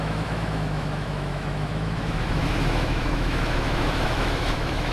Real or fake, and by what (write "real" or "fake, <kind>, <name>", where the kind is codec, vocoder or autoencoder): fake, autoencoder, DAC-VAE